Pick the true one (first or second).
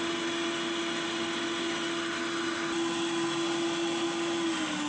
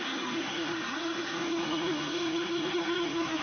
first